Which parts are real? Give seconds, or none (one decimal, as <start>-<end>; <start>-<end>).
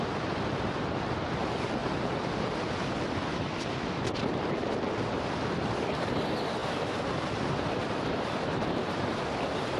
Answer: none